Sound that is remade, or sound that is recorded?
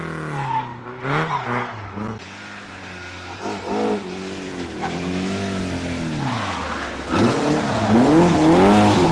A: recorded